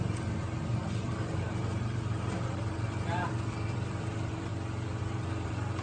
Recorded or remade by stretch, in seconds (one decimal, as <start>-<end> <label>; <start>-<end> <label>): 0.0-4.5 remade; 4.5-5.0 recorded; 5.0-5.8 remade